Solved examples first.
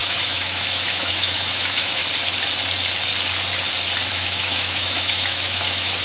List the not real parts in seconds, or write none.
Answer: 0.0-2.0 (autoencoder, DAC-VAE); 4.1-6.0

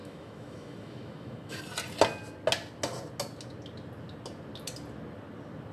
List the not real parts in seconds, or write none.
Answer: 0.0-1.6 (autoencoder, DAC-VAE)

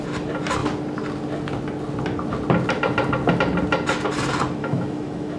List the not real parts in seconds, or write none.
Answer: 4.6-5.4 (autoencoder, DAC-VAE)

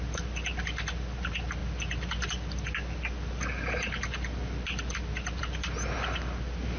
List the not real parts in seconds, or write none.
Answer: none

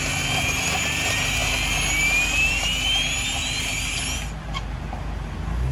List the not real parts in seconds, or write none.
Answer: none

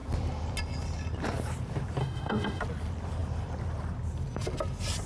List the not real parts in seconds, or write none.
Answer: 2.0-2.6 (autoencoder, DAC-VAE)

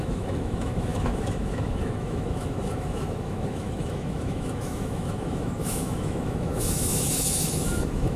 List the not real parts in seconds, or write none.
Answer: 0.0-8.2 (autoencoder, DAC-VAE)

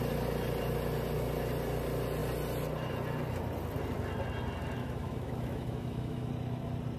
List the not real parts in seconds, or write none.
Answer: 4.8-6.3 (autoencoder, DAC-VAE)